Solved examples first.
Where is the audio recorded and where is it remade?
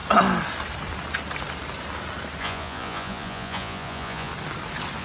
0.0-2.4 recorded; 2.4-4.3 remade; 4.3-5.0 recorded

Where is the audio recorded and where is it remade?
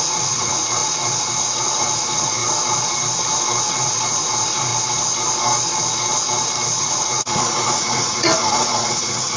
0.0-2.4 remade; 2.4-3.6 recorded; 3.6-4.7 remade; 4.7-6.8 recorded; 6.8-9.4 remade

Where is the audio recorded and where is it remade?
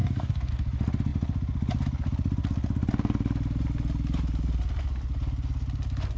0.0-0.5 remade; 0.5-6.2 recorded